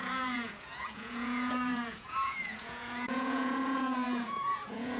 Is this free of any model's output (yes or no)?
no